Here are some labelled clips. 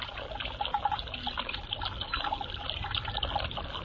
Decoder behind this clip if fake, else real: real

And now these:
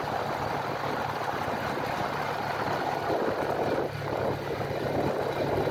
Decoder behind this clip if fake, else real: real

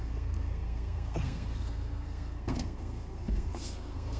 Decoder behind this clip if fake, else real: fake, codec, SNAC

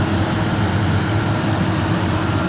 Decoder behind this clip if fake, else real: real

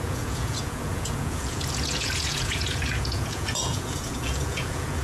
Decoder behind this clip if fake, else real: fake, vocoder, Vocos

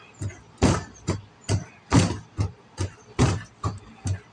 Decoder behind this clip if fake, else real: real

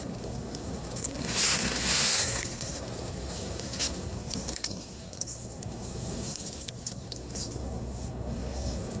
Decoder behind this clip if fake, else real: fake, codec, SNAC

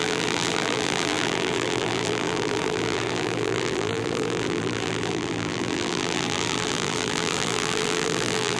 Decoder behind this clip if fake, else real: fake, vocoder, BigVGAN v2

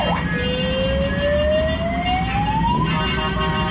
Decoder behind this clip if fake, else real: real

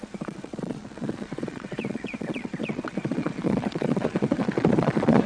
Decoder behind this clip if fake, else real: fake, vocoder, Vocos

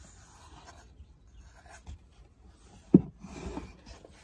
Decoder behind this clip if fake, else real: real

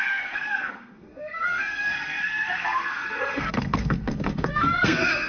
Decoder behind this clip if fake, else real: fake, codec, SNAC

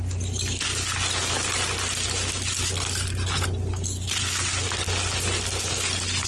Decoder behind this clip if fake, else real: real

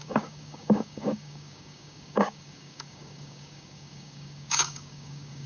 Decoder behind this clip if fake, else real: fake, codec, DAC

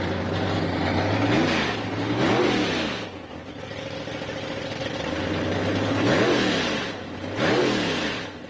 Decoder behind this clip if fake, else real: real